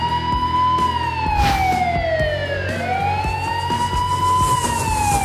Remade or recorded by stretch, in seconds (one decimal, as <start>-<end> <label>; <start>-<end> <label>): 0.0-5.2 recorded